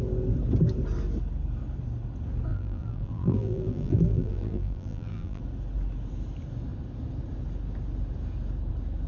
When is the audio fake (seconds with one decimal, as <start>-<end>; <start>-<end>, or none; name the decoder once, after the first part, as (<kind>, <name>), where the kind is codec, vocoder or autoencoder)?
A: 2.5-5.4 (vocoder, BigVGAN v2)